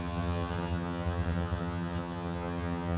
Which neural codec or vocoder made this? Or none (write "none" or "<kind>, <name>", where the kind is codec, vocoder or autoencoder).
vocoder, HiFi-GAN